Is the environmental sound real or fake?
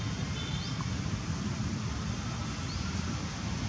fake